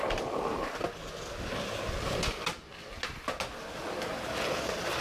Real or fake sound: real